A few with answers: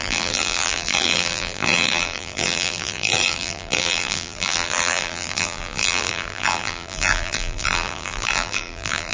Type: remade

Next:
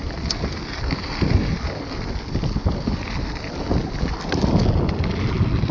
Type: recorded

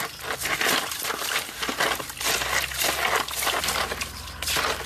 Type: recorded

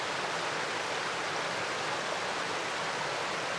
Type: recorded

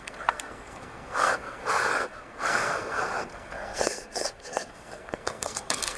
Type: remade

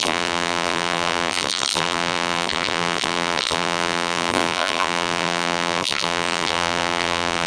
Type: remade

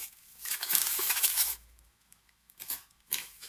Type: remade